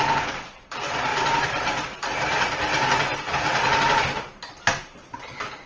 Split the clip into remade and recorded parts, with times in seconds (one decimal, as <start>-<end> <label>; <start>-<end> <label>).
0.0-4.3 remade; 4.3-4.8 recorded; 4.8-5.7 remade